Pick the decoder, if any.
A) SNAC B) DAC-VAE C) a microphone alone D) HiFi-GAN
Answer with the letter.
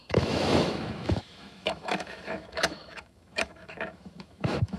B